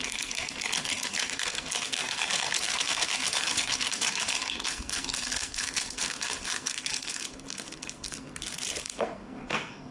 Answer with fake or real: fake